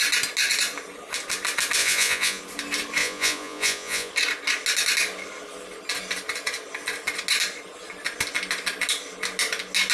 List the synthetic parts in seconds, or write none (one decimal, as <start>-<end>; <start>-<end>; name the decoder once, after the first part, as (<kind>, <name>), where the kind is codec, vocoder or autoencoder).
1.8-2.4 (vocoder, Vocos); 3.0-4.1

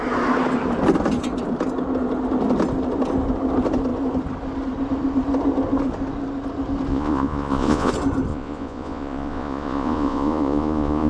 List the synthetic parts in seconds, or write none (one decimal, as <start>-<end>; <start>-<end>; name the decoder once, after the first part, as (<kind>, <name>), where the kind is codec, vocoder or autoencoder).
6.9-7.9 (vocoder, Vocos); 8.3-11.1

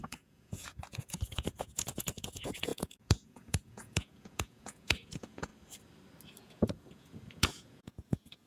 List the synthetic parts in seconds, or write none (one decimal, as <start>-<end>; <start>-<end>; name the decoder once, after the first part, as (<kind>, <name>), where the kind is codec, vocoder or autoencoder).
0.0-5.5 (vocoder, Vocos); 6.4-8.5

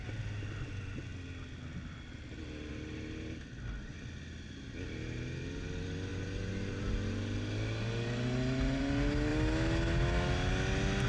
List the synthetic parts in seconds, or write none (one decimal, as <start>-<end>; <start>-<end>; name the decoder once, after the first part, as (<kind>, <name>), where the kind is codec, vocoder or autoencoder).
none

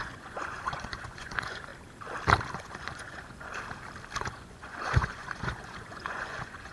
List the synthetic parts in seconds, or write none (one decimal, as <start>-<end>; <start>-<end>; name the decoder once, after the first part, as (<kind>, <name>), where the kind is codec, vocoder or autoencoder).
0.0-1.7 (vocoder, Vocos); 2.5-3.5; 4.2-6.7

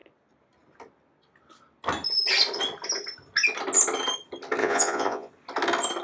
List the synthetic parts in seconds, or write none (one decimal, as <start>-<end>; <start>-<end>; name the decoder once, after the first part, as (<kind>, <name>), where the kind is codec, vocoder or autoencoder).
4.6-5.3 (vocoder, Vocos)

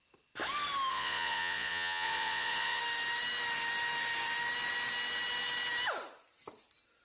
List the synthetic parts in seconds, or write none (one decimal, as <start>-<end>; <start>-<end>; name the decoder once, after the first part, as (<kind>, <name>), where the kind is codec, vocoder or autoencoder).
0.9-2.8 (vocoder, Vocos)